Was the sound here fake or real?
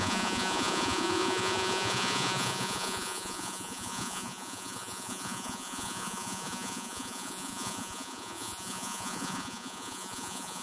fake